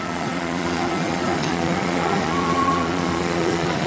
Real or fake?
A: fake